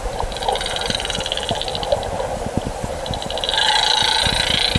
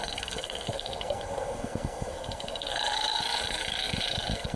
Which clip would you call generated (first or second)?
second